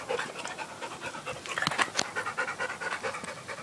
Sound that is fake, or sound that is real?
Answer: real